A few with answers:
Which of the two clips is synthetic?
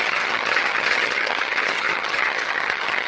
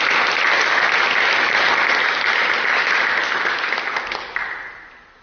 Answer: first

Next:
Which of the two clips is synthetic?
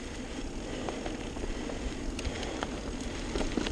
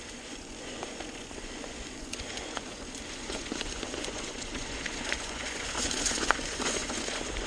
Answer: second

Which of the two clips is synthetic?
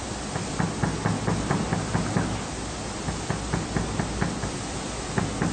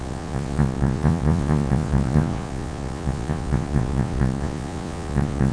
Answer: second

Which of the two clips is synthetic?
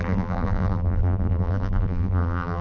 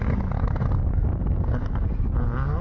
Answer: first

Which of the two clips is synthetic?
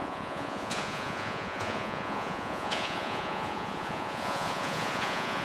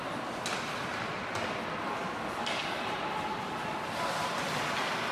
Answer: first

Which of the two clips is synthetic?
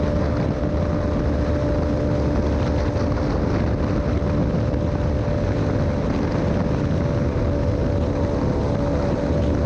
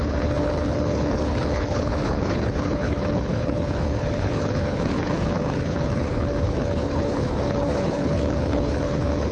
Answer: second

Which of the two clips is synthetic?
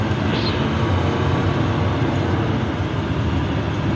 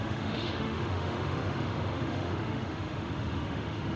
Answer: second